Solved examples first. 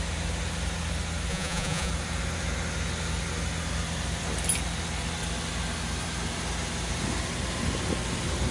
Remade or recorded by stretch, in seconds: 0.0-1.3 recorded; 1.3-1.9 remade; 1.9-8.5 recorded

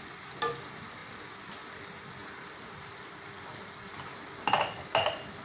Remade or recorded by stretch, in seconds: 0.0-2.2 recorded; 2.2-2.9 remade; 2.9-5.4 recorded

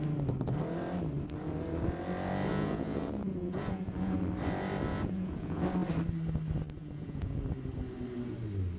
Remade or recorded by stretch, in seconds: 0.0-2.5 recorded; 2.5-4.2 remade; 4.2-4.9 recorded; 4.9-5.6 remade; 5.6-6.8 recorded; 6.8-7.4 remade; 7.4-8.8 recorded